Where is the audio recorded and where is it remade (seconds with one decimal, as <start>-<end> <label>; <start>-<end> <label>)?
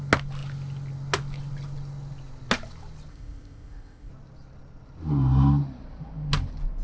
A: 0.0-3.1 recorded; 3.1-4.1 remade; 4.1-6.8 recorded